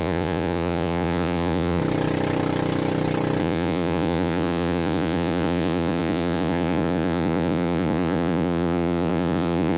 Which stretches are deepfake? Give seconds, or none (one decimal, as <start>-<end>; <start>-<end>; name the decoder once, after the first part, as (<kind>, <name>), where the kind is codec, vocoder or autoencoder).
0.0-1.8 (vocoder, Vocos); 3.4-9.8